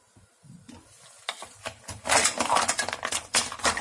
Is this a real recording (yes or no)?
yes